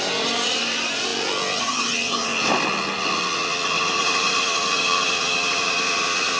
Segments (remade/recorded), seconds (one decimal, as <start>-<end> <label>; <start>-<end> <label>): 0.0-1.1 remade; 1.1-1.6 recorded; 1.6-2.3 remade; 2.3-3.7 recorded; 3.7-6.4 remade